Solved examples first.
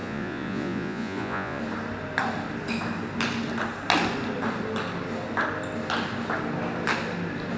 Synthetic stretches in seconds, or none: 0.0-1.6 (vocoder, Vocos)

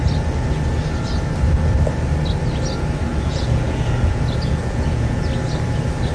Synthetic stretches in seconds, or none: 3.1-5.2 (vocoder, Vocos)

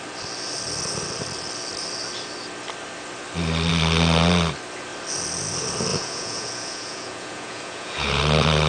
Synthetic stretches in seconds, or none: 5.9-8.2 (vocoder, Vocos)

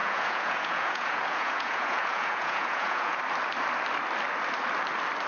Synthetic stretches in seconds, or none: 0.0-3.2 (vocoder, Vocos)

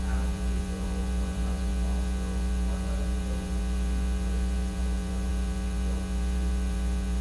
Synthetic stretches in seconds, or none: 0.0-7.2 (vocoder, Vocos)